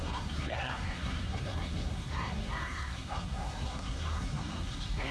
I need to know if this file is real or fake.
fake